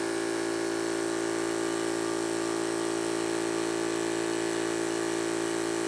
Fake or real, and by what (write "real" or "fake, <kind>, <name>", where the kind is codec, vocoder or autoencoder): real